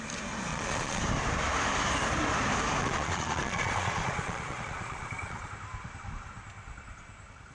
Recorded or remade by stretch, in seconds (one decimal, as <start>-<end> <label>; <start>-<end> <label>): 0.0-0.5 recorded; 0.5-1.0 remade; 1.0-2.8 recorded; 2.8-5.5 remade; 5.5-7.5 recorded